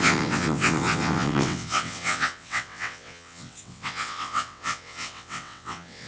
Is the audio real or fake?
fake